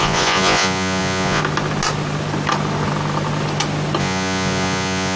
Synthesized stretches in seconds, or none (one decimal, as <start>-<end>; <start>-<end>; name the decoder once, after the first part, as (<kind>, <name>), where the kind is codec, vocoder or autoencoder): 0.0-1.4 (vocoder, Vocos); 4.0-5.2